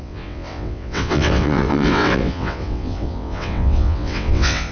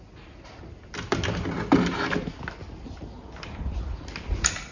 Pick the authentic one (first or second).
second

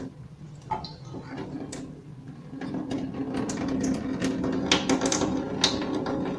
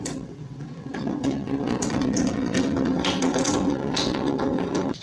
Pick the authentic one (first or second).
first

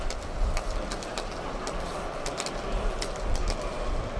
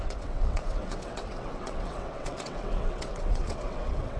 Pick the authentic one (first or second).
first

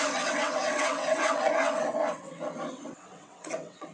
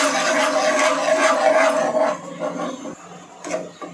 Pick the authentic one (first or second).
second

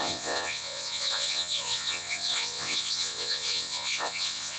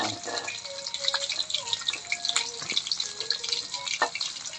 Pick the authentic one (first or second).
second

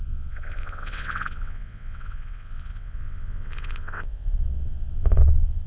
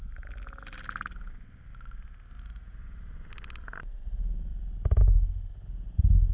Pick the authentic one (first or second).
second